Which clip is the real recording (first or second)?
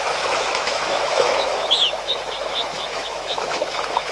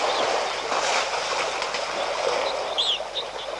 second